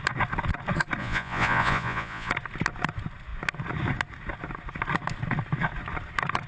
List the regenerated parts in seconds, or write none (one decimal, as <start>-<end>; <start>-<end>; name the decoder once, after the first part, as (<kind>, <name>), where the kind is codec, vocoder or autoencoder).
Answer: 1.0-2.3 (vocoder, Vocos)